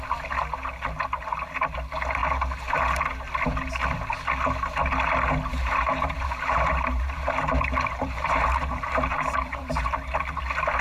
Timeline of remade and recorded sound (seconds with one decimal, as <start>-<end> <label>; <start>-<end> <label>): 0.0-5.5 recorded; 5.5-10.4 remade; 10.4-10.8 recorded

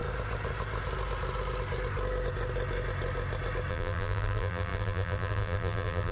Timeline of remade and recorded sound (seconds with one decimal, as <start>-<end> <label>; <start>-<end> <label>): 0.0-3.7 recorded; 3.7-6.1 remade

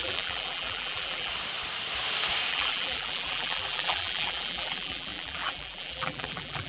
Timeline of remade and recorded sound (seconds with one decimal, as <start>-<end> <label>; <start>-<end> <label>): 0.0-1.3 remade; 1.3-2.5 recorded; 2.5-6.7 remade

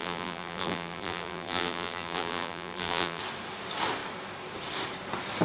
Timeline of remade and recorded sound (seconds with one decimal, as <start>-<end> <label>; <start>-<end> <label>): 0.0-3.2 remade; 3.2-5.4 recorded

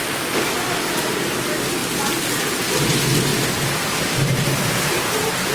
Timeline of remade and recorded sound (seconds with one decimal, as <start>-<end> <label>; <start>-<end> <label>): 0.0-5.5 recorded

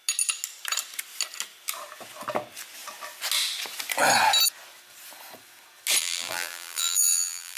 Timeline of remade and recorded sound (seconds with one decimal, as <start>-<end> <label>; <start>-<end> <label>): 0.0-6.0 recorded; 6.0-7.6 remade